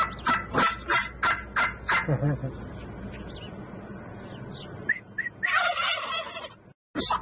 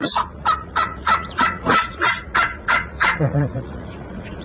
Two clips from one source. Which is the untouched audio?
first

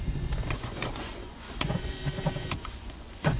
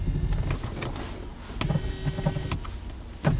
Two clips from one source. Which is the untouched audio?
second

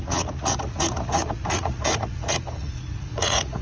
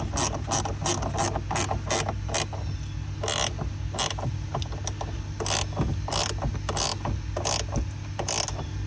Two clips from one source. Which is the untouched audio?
second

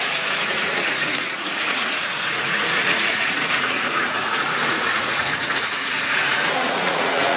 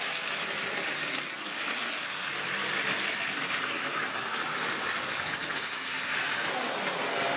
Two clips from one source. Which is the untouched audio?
second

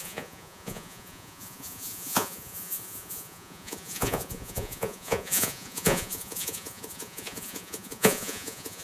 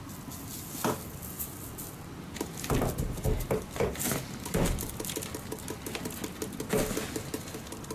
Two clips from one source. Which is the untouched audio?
second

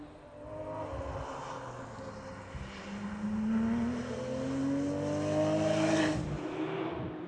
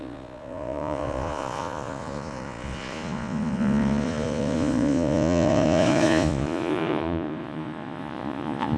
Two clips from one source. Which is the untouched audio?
first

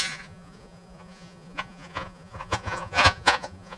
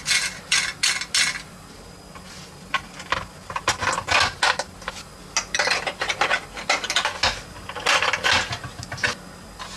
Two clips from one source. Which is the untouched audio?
second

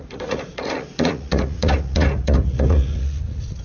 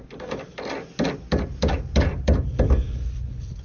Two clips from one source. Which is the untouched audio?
second